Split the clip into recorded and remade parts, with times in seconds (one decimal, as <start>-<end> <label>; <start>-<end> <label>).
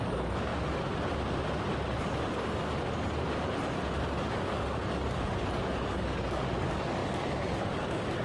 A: 0.0-0.5 remade; 0.5-4.2 recorded; 4.2-8.2 remade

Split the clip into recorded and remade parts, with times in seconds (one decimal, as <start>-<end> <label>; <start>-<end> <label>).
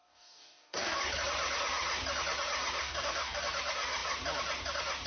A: 0.0-1.0 remade; 1.0-2.8 recorded; 2.8-3.4 remade; 3.4-5.1 recorded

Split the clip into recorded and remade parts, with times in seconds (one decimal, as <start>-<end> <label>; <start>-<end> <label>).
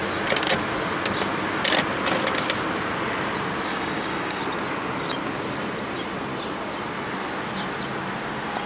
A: 0.0-3.7 recorded; 3.7-4.4 remade; 4.4-8.7 recorded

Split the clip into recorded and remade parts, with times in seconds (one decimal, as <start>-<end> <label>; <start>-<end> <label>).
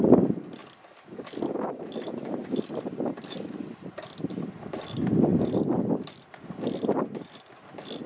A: 0.0-8.1 recorded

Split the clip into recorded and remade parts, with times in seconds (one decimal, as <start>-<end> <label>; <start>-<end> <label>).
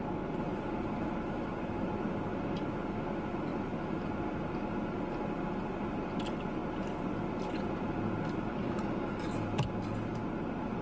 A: 0.0-8.5 recorded; 8.5-9.2 remade; 9.2-10.8 recorded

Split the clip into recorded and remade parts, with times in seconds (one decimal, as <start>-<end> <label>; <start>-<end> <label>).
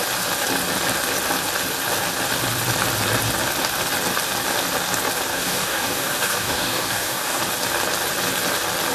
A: 0.0-5.3 recorded; 5.3-7.4 remade; 7.4-8.9 recorded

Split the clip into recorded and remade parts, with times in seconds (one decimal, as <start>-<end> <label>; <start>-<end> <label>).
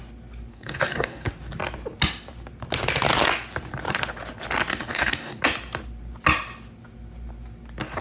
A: 0.0-0.5 recorded; 0.5-1.3 remade; 1.3-4.7 recorded; 4.7-5.4 remade; 5.4-8.0 recorded